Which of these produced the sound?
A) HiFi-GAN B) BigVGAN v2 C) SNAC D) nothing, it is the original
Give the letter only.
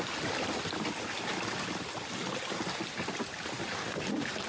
D